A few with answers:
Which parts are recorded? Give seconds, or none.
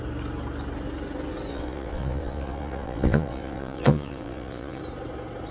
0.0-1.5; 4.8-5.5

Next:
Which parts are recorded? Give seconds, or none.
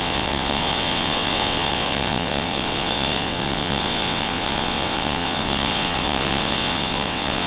none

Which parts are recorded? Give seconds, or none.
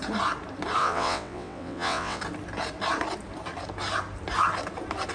0.0-0.8; 2.2-5.1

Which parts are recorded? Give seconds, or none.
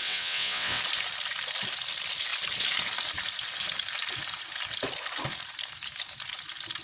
0.8-6.8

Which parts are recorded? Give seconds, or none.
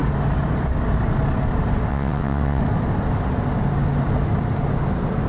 0.0-1.9; 2.6-5.3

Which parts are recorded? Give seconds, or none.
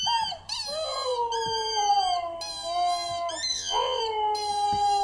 0.0-3.5; 4.0-5.0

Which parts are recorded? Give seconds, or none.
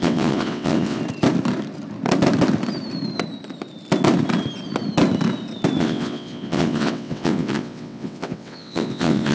1.0-5.8